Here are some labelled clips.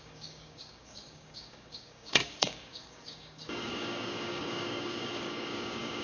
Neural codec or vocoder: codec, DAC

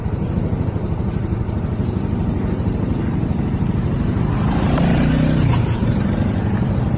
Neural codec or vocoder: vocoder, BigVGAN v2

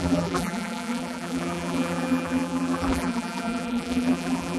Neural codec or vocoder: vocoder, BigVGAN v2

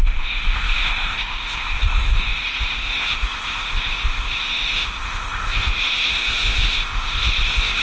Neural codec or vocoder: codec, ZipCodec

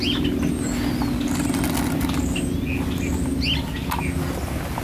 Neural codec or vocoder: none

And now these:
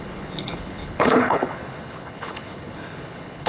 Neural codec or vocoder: codec, HILCodec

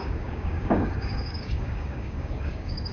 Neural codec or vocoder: codec, DAC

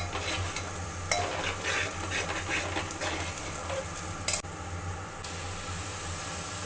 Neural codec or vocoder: none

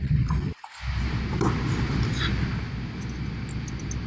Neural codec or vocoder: none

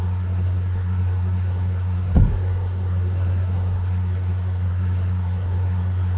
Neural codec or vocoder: codec, SNAC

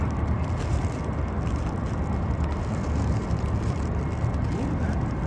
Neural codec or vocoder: vocoder, BigVGAN v2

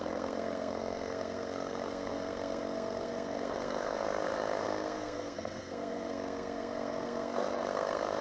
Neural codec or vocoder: codec, SNAC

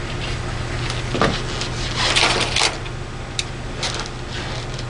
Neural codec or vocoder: none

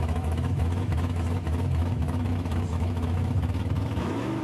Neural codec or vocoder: autoencoder, DAC-VAE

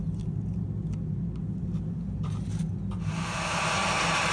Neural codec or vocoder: none